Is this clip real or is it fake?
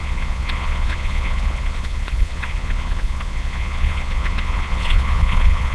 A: fake